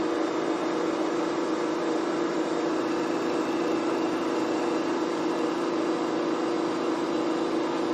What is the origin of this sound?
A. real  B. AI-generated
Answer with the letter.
A